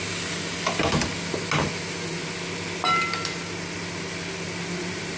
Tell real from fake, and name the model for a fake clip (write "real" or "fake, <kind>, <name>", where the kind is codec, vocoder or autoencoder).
real